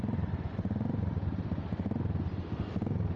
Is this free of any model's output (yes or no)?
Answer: yes